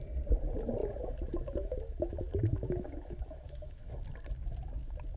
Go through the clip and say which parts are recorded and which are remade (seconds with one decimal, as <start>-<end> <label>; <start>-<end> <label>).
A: 0.0-0.8 recorded; 0.8-3.9 remade; 3.9-5.2 recorded